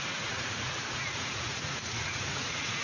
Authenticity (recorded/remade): remade